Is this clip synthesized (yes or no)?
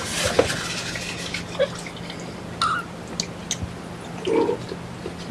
no